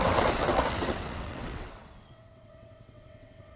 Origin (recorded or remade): remade